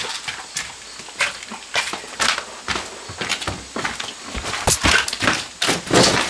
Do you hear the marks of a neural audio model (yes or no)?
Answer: no